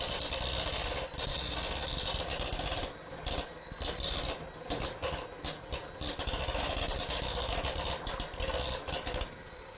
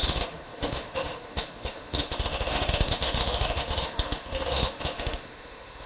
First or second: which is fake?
second